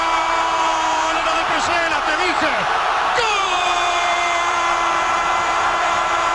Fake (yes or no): yes